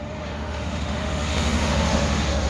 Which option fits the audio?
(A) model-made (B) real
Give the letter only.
A